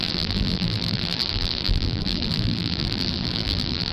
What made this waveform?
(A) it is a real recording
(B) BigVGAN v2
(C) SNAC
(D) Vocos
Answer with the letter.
B